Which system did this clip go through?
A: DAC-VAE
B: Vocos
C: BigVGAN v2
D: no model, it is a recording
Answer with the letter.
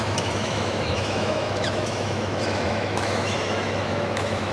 A